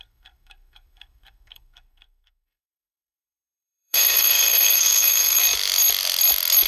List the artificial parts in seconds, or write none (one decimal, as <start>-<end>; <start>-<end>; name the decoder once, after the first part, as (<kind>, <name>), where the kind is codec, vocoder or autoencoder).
0.0-5.4 (codec, SNAC)